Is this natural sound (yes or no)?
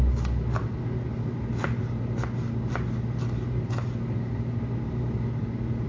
yes